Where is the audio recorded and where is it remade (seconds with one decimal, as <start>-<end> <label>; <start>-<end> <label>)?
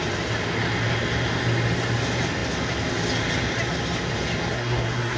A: 0.0-4.5 recorded; 4.5-5.2 remade